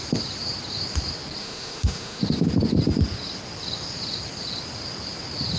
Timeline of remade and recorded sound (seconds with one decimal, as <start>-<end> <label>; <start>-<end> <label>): 0.0-1.4 recorded; 1.4-2.2 remade; 2.2-5.6 recorded